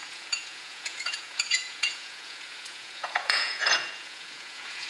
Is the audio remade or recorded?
remade